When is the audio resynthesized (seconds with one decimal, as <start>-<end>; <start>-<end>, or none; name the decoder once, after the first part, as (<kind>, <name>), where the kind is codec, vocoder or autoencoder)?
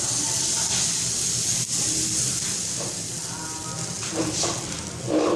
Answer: none